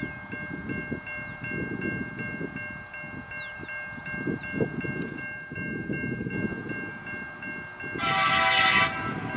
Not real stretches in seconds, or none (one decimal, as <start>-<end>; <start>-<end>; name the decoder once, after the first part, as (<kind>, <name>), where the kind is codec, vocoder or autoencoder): none